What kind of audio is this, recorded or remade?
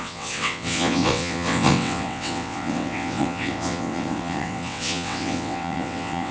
remade